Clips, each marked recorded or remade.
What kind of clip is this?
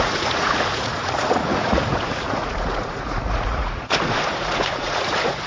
remade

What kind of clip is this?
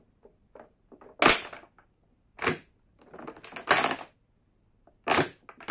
recorded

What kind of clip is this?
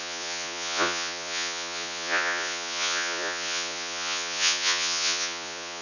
remade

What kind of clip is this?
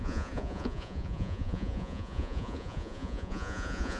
remade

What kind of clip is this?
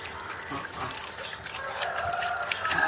recorded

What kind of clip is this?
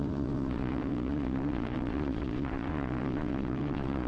remade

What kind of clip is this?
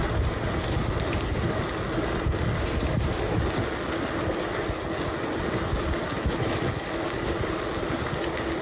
recorded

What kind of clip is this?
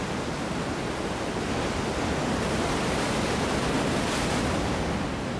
recorded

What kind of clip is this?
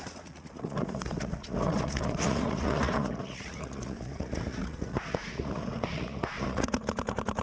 remade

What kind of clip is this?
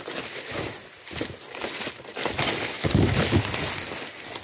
recorded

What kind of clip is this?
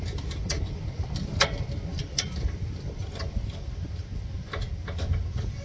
recorded